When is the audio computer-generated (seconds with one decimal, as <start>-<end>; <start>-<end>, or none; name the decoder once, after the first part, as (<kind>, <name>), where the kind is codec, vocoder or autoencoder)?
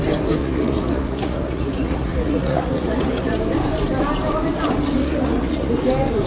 0.4-3.4 (vocoder, Vocos); 5.0-5.7